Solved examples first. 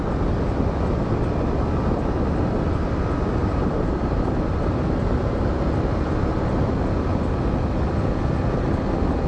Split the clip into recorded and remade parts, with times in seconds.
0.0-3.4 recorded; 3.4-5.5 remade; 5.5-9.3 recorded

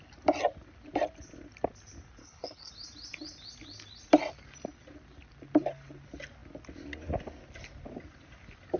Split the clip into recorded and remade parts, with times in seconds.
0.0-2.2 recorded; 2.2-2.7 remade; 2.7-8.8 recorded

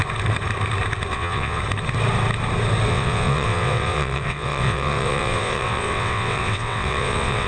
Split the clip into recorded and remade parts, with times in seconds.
0.0-1.1 recorded; 1.1-1.6 remade; 1.6-2.9 recorded; 2.9-7.5 remade

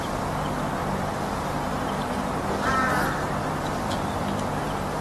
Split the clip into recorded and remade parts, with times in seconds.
0.0-0.8 recorded; 0.8-2.5 remade; 2.5-3.4 recorded; 3.4-4.2 remade; 4.2-5.0 recorded

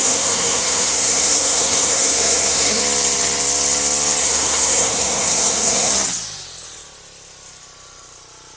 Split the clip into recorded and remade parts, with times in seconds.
0.0-2.8 remade; 2.8-4.2 recorded; 4.2-5.9 remade; 5.9-8.6 recorded